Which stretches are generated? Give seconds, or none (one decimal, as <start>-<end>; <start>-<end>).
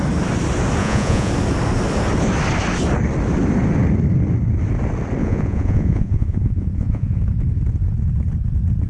0.8-1.3; 5.2-7.2